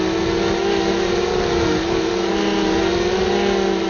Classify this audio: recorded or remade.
recorded